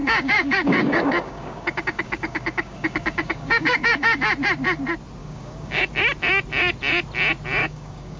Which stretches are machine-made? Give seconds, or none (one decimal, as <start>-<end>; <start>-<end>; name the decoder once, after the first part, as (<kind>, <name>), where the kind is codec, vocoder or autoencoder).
0.0-4.2 (codec, DAC); 5.2-5.9; 7.6-8.2